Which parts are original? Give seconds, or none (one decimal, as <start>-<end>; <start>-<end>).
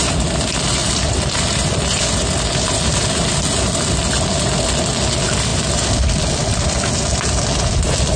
0.0-0.8; 4.0-5.5; 6.9-8.2